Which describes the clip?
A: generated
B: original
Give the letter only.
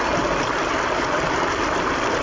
B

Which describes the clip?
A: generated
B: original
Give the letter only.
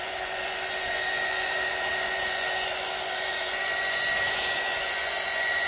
A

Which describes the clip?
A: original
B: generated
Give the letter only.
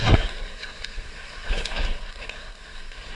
B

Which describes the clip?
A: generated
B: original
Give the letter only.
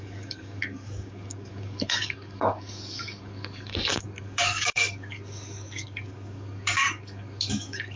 A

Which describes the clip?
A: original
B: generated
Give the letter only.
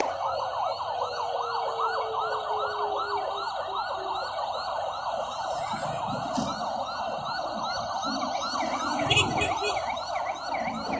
A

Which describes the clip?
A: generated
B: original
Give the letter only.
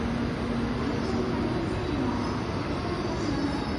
B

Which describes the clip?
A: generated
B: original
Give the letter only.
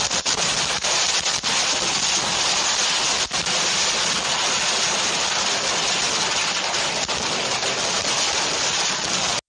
B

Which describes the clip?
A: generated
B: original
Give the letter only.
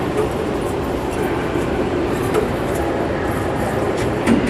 A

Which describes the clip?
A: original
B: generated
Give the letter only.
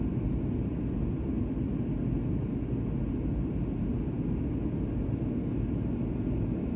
A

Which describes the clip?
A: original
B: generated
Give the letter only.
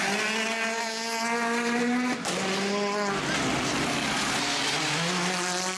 A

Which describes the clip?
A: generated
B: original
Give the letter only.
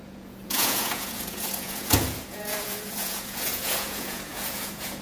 A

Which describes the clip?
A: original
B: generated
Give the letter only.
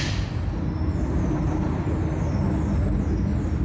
A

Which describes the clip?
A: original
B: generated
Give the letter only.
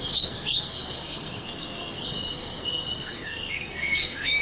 B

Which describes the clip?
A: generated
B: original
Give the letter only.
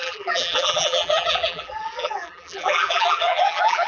A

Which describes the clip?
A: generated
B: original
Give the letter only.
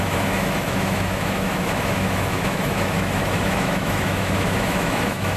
A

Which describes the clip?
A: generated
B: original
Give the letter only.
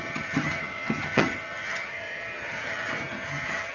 A